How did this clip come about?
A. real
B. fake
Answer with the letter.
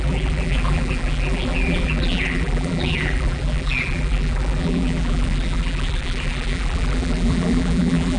B